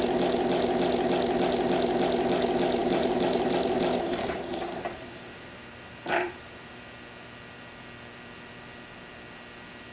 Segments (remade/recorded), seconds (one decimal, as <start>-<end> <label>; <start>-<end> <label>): 0.0-2.8 recorded; 2.8-6.8 remade; 6.8-9.9 recorded